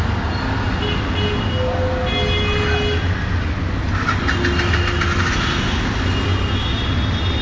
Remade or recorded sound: recorded